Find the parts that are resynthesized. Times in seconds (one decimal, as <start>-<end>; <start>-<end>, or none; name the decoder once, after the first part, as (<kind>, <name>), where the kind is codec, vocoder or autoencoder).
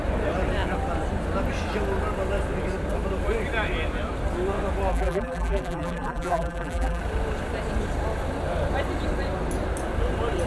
4.9-7.0 (vocoder, BigVGAN v2)